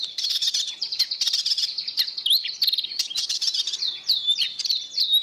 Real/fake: real